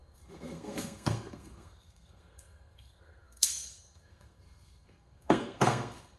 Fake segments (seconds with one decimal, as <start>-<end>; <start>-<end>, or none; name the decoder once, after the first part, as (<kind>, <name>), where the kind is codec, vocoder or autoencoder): 0.0-6.2 (codec, SNAC)